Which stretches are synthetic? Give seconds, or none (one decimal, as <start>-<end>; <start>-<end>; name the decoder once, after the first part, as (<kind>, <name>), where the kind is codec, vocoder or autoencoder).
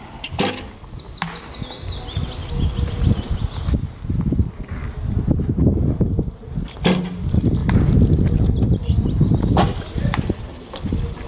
none